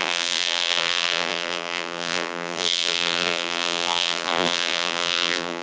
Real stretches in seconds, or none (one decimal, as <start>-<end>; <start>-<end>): none